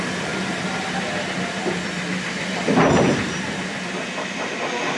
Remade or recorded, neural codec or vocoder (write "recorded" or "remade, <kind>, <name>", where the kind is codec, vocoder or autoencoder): recorded